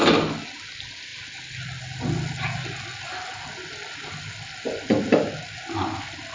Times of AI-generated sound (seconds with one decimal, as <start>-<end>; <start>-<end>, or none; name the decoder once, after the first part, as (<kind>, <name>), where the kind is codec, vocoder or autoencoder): none